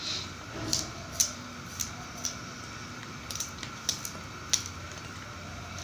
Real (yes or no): yes